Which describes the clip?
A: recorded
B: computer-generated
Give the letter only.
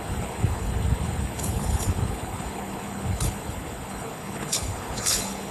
B